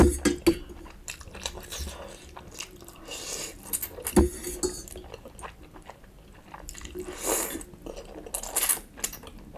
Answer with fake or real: real